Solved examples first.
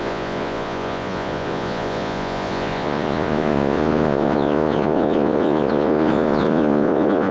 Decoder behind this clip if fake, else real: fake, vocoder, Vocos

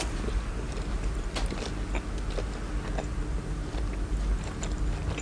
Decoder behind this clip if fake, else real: real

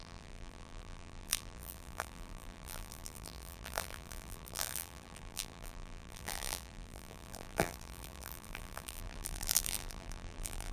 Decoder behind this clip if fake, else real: fake, vocoder, BigVGAN v2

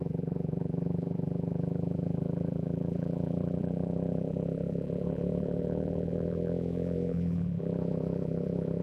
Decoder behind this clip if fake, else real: fake, vocoder, BigVGAN v2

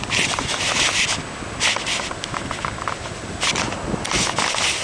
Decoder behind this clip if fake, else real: real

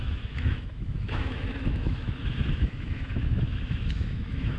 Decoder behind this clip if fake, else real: fake, autoencoder, DAC-VAE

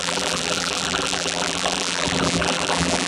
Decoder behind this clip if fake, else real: fake, vocoder, BigVGAN v2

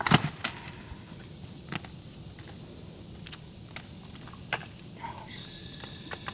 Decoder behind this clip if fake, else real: real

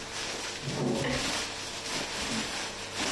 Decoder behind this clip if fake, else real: real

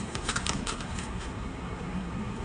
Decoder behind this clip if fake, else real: fake, codec, SNAC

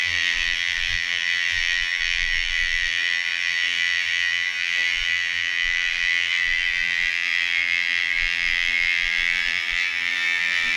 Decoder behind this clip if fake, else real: fake, vocoder, BigVGAN v2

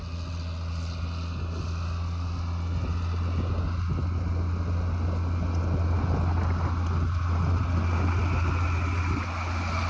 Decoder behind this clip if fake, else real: real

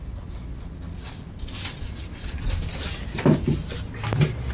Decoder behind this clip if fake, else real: real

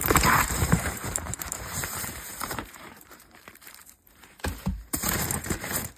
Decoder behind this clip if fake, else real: fake, vocoder, BigVGAN v2